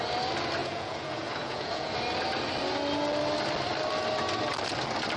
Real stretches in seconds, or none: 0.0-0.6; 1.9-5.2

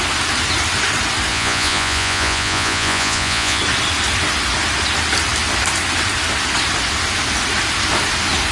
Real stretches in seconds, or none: 0.0-1.3; 3.6-8.5

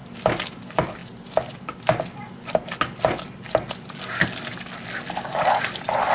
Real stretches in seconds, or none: 0.0-6.1

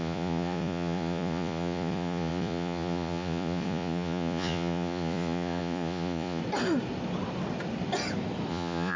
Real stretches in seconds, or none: 6.4-8.5